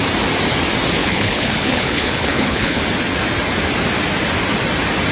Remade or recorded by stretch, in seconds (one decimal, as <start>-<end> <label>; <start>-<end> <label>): 0.0-1.0 recorded; 1.0-2.8 remade; 2.8-5.1 recorded